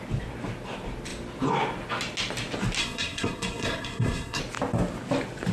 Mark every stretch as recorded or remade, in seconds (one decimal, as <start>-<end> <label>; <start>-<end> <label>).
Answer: 0.0-2.8 recorded; 2.8-4.4 remade; 4.4-5.5 recorded